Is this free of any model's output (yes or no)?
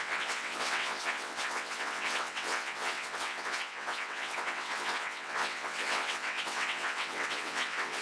no